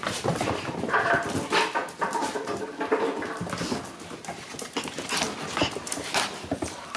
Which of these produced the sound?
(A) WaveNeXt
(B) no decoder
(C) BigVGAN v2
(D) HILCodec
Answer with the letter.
B